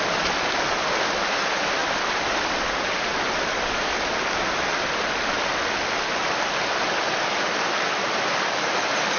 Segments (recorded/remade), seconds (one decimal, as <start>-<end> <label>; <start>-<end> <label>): 0.0-9.2 recorded